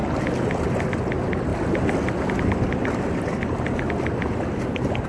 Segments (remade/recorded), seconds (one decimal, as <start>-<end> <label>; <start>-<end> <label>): 0.0-5.1 recorded